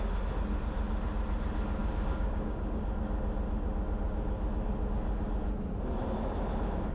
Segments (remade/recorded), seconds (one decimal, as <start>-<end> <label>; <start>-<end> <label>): 0.0-1.8 recorded; 1.8-2.8 remade; 2.8-6.9 recorded